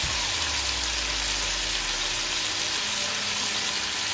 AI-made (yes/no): no